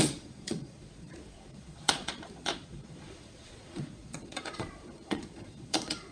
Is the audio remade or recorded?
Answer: remade